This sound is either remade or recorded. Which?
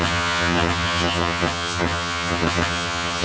remade